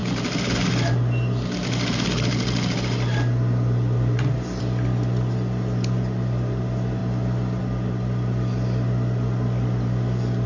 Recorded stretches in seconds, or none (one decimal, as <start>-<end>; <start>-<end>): 0.0-10.5

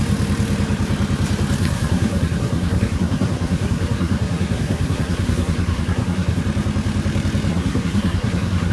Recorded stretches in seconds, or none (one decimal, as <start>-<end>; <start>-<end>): 0.0-1.6; 6.4-7.5

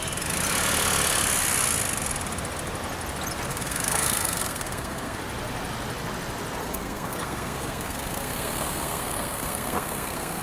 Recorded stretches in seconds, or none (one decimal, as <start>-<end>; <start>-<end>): 0.0-3.5; 5.2-6.6

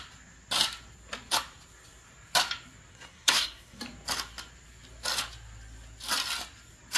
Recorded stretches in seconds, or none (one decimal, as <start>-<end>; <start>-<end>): 0.0-2.9; 3.8-7.0

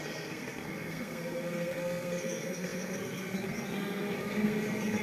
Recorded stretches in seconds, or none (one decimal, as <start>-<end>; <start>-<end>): none

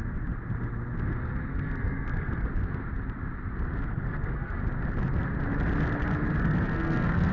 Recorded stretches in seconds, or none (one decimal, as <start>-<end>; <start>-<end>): 0.0-1.5; 2.5-3.9; 4.6-6.4

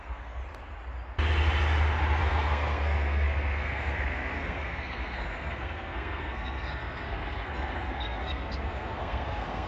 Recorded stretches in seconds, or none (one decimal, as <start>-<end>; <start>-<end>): 0.4-2.2